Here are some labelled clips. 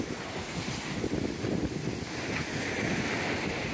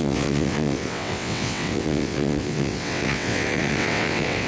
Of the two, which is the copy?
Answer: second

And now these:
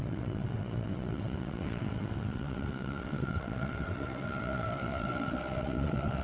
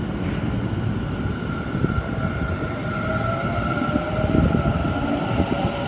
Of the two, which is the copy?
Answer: first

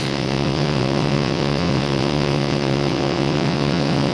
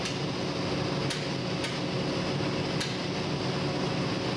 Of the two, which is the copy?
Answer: first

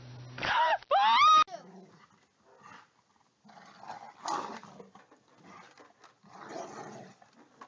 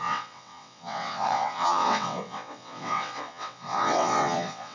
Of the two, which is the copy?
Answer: second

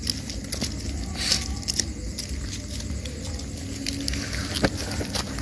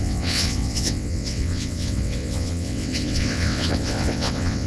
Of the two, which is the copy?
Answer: second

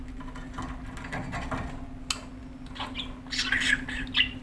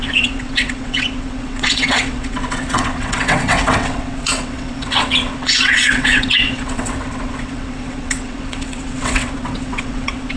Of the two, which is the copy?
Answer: second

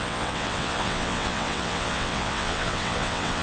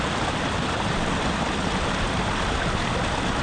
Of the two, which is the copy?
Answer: first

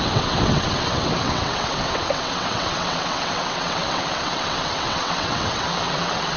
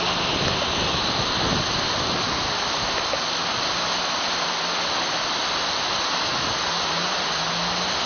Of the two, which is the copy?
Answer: first